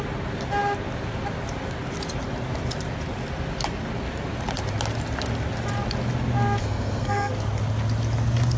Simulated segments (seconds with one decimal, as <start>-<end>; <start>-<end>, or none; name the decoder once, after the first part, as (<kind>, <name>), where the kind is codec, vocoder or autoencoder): 6.6-7.3 (codec, SNAC)